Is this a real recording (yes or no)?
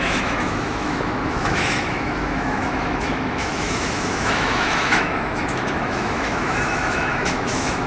no